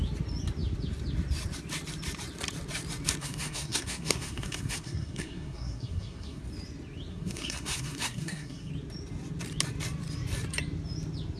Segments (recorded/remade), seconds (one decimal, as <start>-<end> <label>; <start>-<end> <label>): 0.0-3.2 recorded; 3.2-6.4 remade; 6.4-7.1 recorded; 7.1-8.7 remade; 8.7-11.4 recorded